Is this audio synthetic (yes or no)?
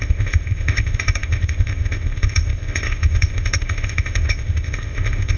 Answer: yes